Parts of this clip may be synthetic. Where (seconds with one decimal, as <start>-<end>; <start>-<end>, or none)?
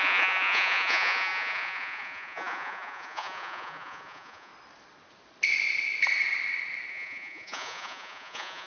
0.0-4.5; 6.9-8.7